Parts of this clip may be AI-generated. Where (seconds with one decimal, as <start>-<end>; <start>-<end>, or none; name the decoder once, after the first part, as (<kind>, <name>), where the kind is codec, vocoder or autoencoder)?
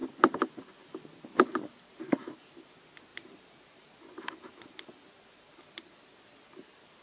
3.1-5.6 (vocoder, BigVGAN v2)